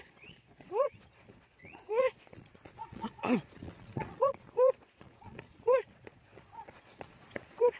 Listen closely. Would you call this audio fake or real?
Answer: fake